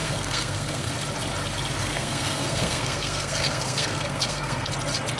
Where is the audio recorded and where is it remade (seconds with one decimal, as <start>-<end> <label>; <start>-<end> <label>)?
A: 0.0-0.9 remade; 0.9-1.8 recorded; 1.8-4.7 remade; 4.7-5.2 recorded

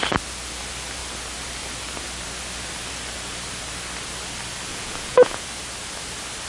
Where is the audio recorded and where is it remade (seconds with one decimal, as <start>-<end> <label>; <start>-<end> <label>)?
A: 0.0-4.7 recorded; 4.7-5.4 remade; 5.4-6.5 recorded

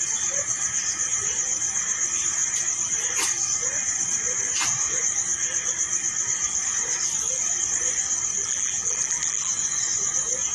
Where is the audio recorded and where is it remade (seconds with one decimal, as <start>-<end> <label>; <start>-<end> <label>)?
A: 0.0-8.4 recorded; 8.4-9.5 remade; 9.5-10.5 recorded

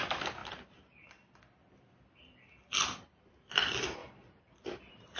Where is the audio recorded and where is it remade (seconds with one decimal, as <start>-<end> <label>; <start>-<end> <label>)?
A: 0.0-5.2 recorded

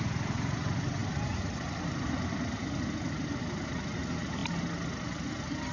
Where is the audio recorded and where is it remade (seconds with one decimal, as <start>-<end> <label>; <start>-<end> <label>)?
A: 0.0-5.7 recorded

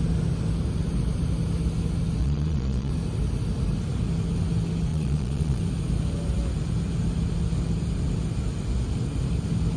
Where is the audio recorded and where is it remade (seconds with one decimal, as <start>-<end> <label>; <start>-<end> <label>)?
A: 0.0-2.2 recorded; 2.2-2.9 remade; 2.9-4.9 recorded; 4.9-5.6 remade; 5.6-9.8 recorded

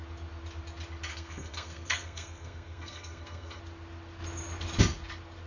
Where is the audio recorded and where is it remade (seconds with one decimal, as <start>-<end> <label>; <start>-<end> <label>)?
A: 0.0-1.1 recorded; 1.1-3.6 remade; 3.6-5.5 recorded